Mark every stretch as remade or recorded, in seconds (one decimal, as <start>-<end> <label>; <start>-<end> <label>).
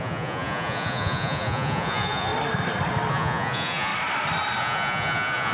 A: 0.0-2.3 remade; 2.3-3.1 recorded; 3.1-3.9 remade; 3.9-4.6 recorded; 4.6-5.5 remade